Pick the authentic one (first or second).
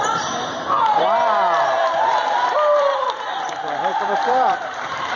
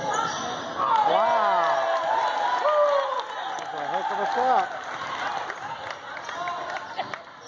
second